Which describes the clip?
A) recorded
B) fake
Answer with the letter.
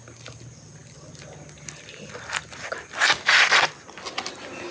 A